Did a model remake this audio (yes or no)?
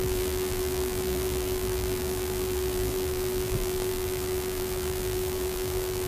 yes